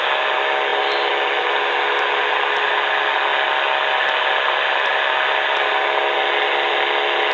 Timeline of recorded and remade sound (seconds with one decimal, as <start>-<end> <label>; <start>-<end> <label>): 0.0-7.3 recorded